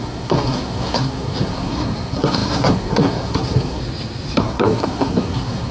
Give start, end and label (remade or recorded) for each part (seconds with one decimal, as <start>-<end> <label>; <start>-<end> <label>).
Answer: 0.0-3.8 remade; 3.8-4.4 recorded; 4.4-5.7 remade